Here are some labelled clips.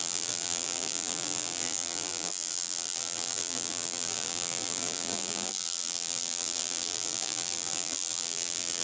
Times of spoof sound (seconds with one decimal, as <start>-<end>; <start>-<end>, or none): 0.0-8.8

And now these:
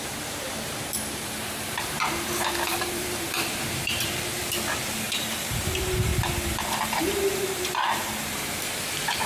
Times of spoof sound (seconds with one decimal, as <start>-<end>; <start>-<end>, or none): 0.0-4.4; 4.9-6.1; 6.6-9.3

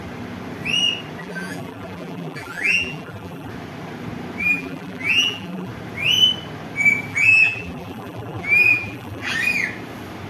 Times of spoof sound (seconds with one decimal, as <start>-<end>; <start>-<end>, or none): 1.2-3.5; 4.4-5.7; 7.1-9.3

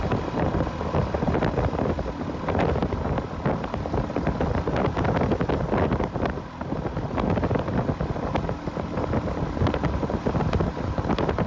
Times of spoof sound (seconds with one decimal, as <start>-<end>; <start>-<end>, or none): none

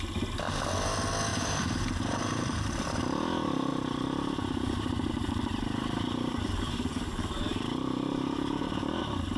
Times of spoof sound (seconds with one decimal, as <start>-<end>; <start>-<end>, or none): 1.3-3.0; 3.7-9.0

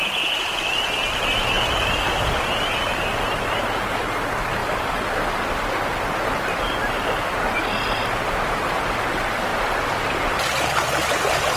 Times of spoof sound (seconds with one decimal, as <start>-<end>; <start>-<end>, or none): 4.6-7.1; 9.5-11.1